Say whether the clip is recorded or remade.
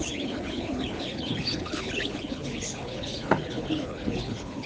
remade